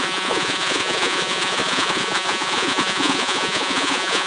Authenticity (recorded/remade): remade